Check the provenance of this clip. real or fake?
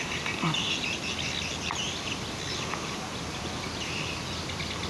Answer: real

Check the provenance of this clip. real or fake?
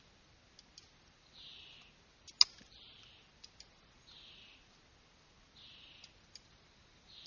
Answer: real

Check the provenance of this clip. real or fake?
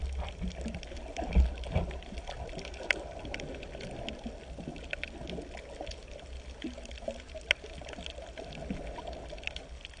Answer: real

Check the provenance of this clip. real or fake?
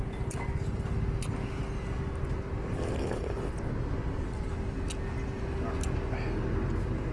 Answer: real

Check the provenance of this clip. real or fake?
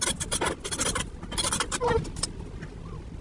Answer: real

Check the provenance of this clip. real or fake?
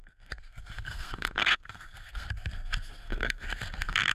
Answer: fake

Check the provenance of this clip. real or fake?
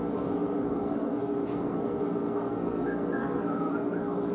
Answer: fake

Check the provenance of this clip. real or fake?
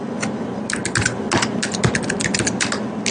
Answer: real